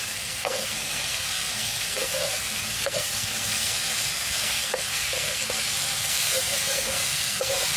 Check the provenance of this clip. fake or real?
fake